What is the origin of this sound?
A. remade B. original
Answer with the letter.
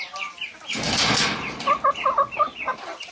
B